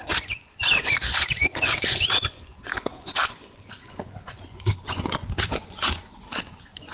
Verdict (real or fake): fake